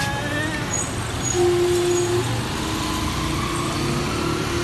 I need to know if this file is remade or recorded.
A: recorded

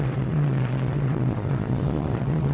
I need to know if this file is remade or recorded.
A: remade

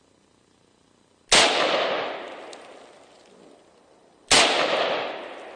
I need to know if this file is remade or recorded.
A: recorded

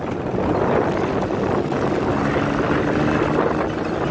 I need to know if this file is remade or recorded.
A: recorded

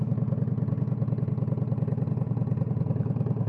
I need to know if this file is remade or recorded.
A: recorded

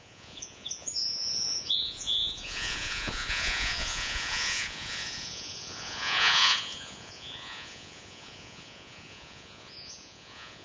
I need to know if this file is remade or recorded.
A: remade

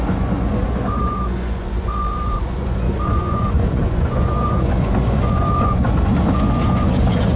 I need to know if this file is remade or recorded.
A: remade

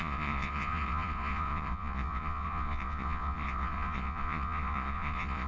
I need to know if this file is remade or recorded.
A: remade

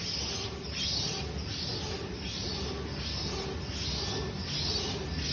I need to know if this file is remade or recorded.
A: recorded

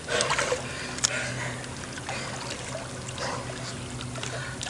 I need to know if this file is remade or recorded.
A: recorded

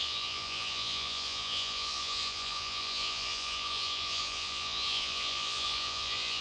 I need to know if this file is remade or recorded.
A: remade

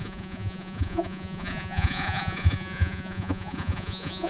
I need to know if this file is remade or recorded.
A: remade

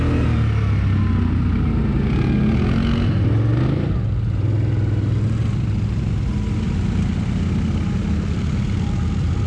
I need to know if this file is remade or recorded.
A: recorded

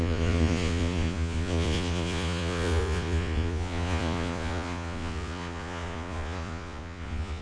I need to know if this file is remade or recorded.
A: remade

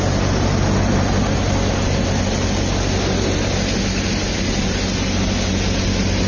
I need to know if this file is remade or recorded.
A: recorded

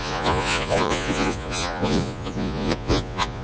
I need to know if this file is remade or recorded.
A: remade